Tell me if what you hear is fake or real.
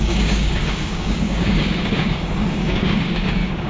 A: fake